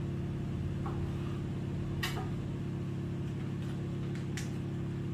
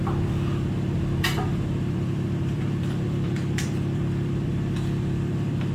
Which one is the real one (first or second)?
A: first